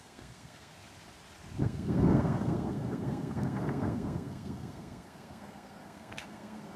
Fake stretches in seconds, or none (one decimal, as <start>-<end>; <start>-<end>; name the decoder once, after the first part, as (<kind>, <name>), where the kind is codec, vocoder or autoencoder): 0.0-0.7 (codec, SNAC); 1.6-6.8